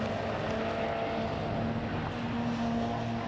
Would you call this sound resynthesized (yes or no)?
no